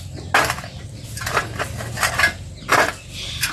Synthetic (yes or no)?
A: no